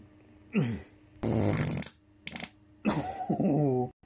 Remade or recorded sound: recorded